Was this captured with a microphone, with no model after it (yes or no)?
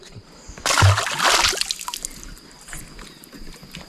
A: yes